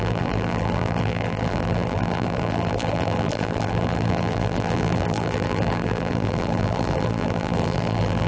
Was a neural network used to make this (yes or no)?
yes